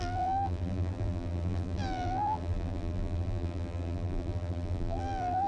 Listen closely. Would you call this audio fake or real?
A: fake